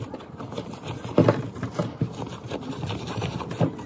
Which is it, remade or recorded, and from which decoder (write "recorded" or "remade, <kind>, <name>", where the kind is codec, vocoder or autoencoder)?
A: remade, vocoder, BigVGAN v2